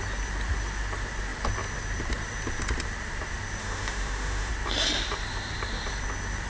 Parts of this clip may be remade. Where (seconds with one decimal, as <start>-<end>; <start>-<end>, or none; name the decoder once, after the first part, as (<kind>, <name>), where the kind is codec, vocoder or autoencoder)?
3.6-4.5 (autoencoder, DAC-VAE)